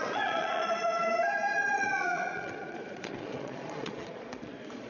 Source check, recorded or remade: remade